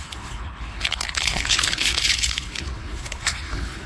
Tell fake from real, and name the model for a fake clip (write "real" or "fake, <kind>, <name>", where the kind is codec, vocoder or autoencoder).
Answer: fake, codec, HILCodec